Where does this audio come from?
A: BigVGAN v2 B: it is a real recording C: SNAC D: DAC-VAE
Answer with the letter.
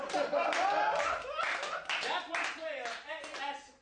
B